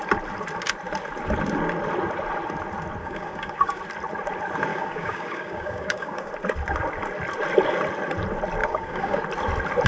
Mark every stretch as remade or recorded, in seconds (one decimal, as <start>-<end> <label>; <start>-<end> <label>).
0.0-3.0 recorded; 3.0-3.8 remade; 3.8-4.7 recorded; 4.7-6.3 remade; 6.3-8.6 recorded; 8.6-9.2 remade; 9.2-9.9 recorded